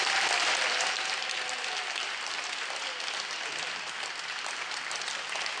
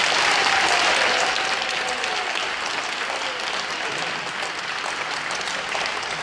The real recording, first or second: second